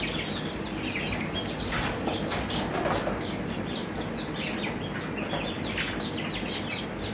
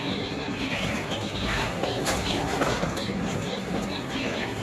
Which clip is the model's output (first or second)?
second